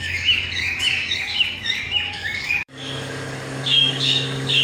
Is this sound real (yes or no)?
no